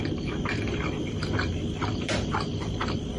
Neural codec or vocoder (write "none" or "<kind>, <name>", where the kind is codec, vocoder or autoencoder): none